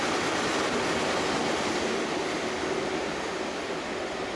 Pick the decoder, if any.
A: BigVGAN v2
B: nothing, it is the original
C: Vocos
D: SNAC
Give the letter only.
B